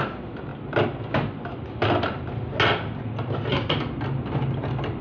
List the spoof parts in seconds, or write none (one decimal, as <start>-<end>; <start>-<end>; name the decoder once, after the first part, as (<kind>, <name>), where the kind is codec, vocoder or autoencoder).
none